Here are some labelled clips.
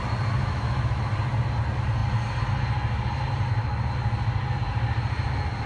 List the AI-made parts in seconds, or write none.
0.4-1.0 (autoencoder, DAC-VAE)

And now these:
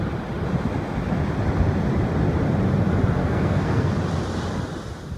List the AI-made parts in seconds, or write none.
3.2-3.9 (codec, SNAC)

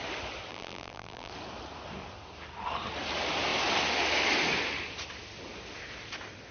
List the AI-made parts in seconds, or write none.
0.5-1.3 (vocoder, BigVGAN v2)

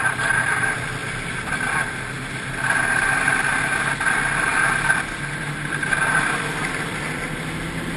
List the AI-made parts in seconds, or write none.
none

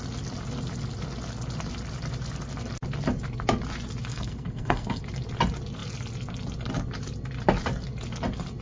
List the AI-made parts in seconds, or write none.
4.1-5.0 (codec, SNAC)

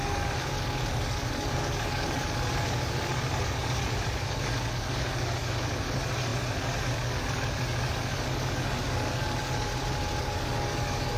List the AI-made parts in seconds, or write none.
0.0-9.7 (codec, DAC); 10.2-11.2